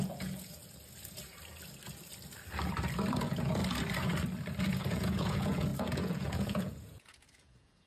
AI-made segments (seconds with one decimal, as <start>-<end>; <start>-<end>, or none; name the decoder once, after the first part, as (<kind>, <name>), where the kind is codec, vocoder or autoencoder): 0.0-0.6 (vocoder, Vocos); 3.1-3.6; 4.6-7.9